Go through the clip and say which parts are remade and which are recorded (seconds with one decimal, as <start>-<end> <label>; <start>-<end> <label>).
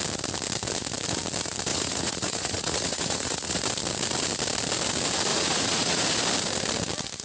0.0-1.7 recorded; 1.7-3.6 remade; 3.6-5.3 recorded; 5.3-6.0 remade; 6.0-7.2 recorded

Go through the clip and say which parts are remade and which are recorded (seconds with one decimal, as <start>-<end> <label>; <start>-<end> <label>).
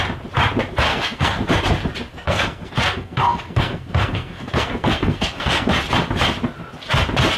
0.0-0.9 recorded; 0.9-1.5 remade; 1.5-2.1 recorded; 2.1-5.7 remade; 5.7-7.4 recorded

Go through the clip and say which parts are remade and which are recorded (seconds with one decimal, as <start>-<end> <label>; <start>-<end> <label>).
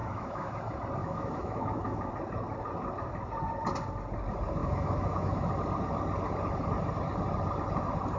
0.0-0.6 remade; 0.6-1.0 recorded; 1.0-2.1 remade; 2.1-4.6 recorded; 4.6-5.5 remade; 5.5-8.2 recorded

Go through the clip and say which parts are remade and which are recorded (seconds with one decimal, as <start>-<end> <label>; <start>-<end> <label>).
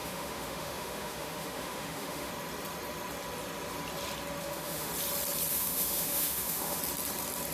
0.0-2.3 remade; 2.3-4.4 recorded; 4.4-4.9 remade; 4.9-5.5 recorded; 5.5-6.8 remade; 6.8-7.5 recorded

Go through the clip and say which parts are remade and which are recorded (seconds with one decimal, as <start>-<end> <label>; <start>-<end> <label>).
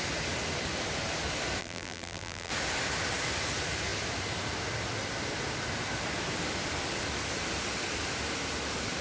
0.0-1.6 recorded; 1.6-2.5 remade; 2.5-9.0 recorded